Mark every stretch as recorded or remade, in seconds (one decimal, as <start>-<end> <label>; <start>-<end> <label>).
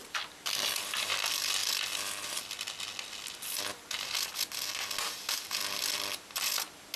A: 0.0-7.0 recorded